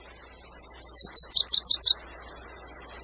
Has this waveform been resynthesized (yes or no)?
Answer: no